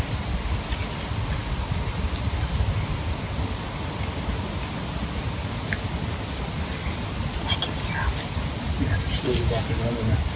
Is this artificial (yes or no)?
no